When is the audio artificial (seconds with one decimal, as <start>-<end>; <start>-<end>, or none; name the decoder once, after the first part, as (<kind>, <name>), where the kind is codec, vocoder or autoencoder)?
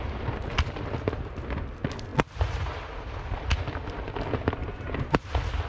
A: 4.6-5.2 (vocoder, BigVGAN v2)